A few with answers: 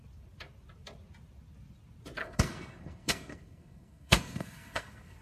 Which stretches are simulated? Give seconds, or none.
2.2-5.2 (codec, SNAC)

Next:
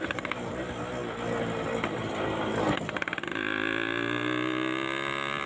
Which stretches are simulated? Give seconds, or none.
none

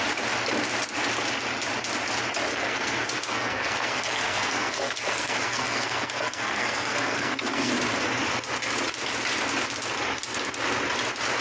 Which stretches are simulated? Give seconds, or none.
2.5-7.7 (codec, SNAC)